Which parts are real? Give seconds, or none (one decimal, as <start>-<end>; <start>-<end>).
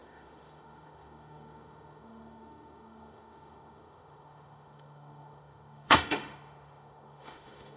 none